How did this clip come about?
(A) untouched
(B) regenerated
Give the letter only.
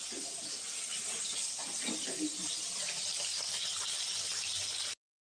A